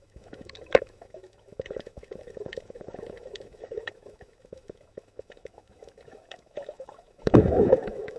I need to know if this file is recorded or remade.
remade